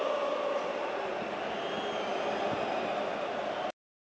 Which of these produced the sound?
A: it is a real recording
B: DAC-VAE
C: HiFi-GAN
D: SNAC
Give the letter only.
A